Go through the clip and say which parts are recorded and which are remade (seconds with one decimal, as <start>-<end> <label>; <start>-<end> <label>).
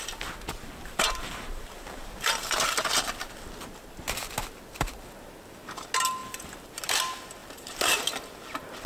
0.0-0.6 recorded; 0.6-2.7 remade; 2.7-6.2 recorded; 6.2-7.0 remade; 7.0-7.4 recorded; 7.4-8.1 remade; 8.1-8.9 recorded